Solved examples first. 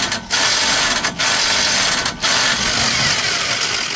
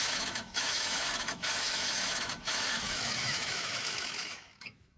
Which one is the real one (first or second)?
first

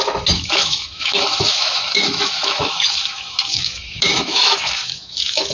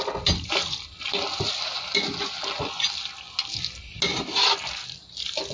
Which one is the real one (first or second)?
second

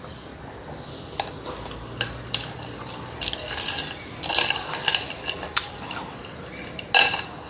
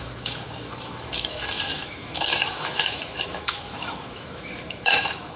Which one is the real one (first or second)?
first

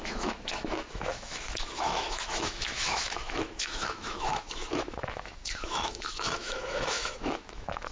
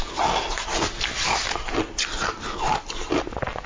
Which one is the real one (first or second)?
second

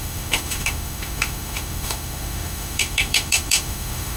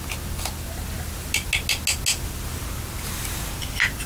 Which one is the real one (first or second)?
second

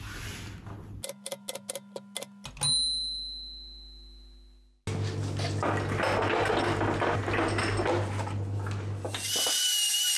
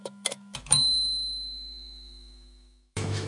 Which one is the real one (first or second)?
first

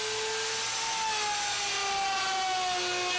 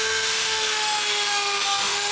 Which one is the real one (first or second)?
first